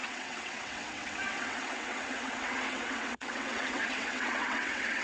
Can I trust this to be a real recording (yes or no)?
no